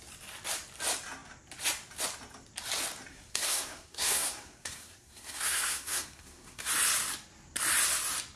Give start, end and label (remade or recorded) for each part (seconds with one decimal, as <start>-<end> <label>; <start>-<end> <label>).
0.0-3.1 recorded; 3.1-6.7 remade; 6.7-8.4 recorded